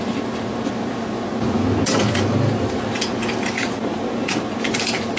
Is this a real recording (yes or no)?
yes